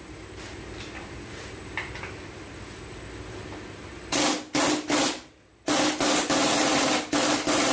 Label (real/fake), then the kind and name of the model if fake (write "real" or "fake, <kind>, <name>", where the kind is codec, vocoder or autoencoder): real